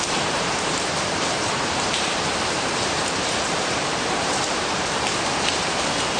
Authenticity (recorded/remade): remade